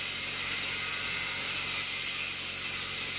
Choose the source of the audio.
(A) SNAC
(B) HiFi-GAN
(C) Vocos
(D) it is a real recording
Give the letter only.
D